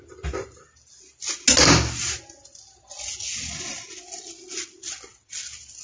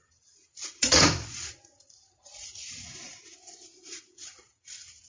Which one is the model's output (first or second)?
second